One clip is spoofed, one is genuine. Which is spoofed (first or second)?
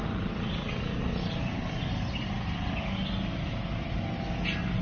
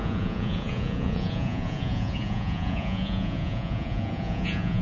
second